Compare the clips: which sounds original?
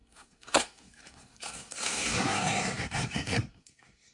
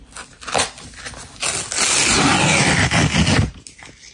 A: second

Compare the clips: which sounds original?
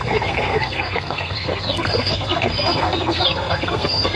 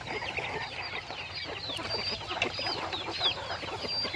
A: second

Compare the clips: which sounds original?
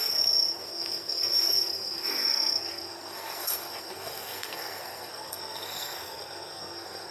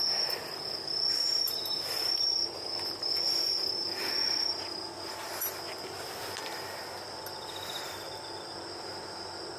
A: second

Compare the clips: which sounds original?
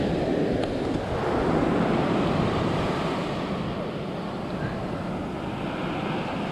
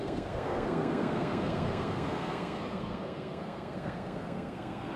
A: first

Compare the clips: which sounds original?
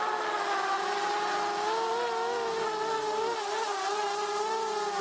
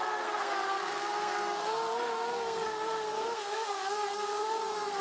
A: first